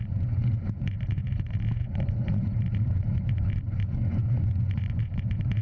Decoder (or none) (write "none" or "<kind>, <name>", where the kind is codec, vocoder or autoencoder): vocoder, Vocos